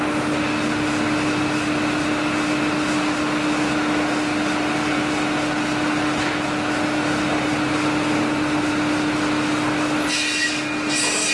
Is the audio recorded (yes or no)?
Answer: yes